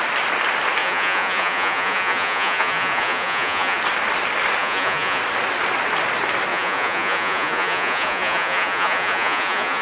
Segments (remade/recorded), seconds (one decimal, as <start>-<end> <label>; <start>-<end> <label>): 0.0-0.8 recorded; 0.8-3.8 remade; 3.8-4.6 recorded; 4.6-5.2 remade; 5.2-6.5 recorded; 6.5-9.8 remade